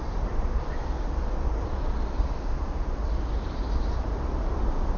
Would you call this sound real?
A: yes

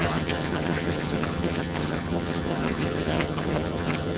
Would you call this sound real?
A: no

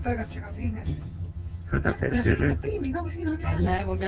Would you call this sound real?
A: no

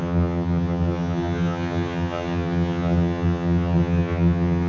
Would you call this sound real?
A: no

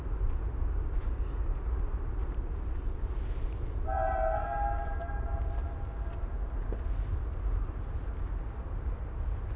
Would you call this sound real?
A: yes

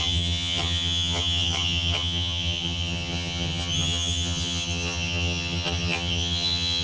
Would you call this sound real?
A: no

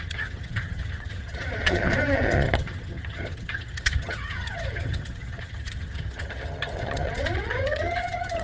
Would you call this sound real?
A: no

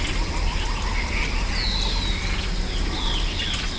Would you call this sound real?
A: yes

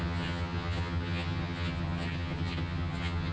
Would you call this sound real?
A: no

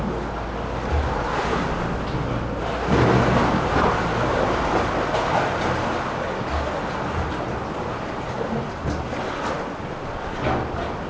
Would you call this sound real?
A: yes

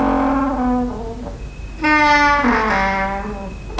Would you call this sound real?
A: yes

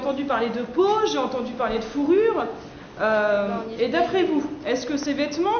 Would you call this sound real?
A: yes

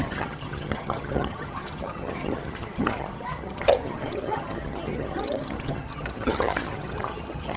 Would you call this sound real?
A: no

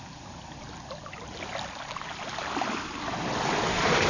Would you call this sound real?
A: yes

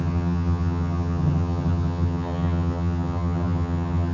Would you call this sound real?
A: no